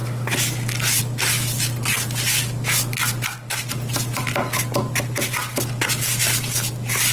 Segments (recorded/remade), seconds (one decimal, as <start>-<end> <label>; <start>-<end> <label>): 0.0-7.1 recorded